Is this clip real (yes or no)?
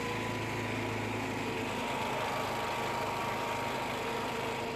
yes